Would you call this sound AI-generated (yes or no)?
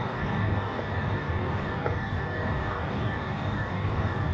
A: yes